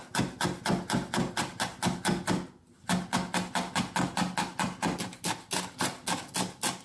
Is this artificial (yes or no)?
no